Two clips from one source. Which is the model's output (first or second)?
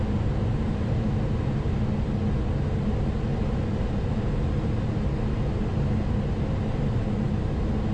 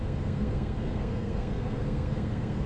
second